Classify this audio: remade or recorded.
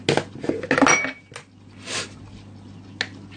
recorded